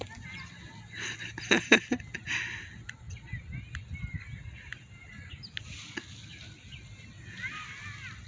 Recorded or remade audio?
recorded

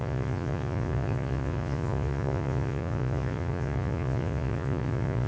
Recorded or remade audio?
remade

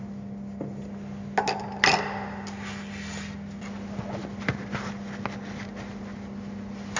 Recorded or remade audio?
recorded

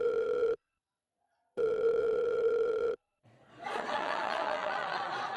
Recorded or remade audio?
remade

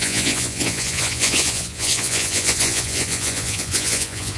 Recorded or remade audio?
remade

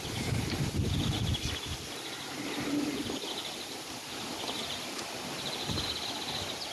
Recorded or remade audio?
recorded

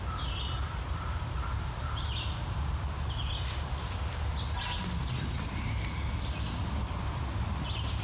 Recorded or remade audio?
recorded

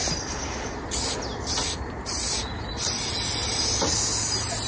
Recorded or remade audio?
recorded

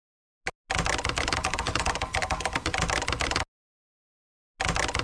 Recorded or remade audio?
recorded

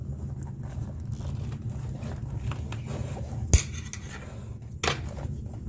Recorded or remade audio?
recorded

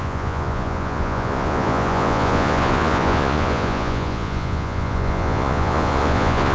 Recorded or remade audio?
remade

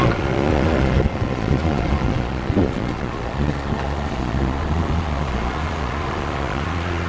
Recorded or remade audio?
remade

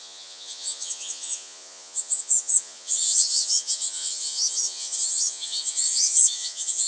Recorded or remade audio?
remade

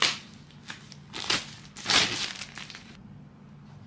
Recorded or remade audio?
recorded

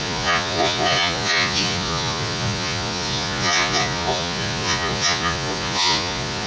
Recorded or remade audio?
remade